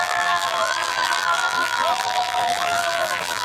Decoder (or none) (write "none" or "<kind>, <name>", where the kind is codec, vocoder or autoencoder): vocoder, BigVGAN v2